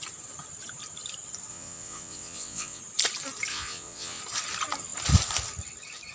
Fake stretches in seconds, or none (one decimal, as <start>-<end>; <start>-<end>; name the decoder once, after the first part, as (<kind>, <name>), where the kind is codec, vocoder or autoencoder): 1.5-2.8 (vocoder, WaveNeXt); 3.5-4.2